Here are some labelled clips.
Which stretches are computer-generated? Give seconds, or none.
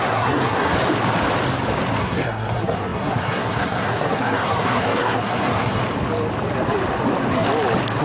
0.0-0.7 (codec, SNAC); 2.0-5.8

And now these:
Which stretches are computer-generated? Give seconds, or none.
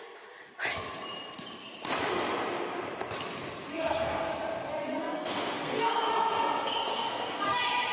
3.7-4.3 (codec, SNAC); 5.0-6.1; 6.9-7.4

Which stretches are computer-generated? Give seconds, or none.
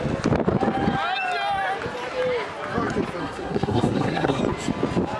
3.2-4.4 (codec, SNAC)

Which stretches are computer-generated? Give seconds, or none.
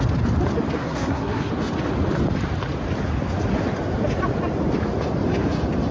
0.8-1.5 (codec, SNAC)